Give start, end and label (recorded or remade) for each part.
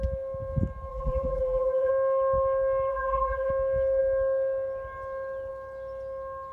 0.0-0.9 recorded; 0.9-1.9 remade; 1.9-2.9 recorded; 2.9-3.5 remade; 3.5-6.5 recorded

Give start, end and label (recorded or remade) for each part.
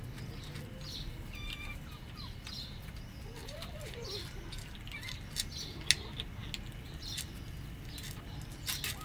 0.0-3.4 recorded; 3.4-5.1 remade; 5.1-9.0 recorded